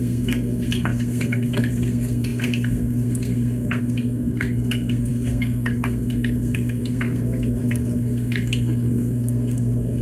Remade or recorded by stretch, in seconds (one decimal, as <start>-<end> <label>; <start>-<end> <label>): 0.0-10.0 remade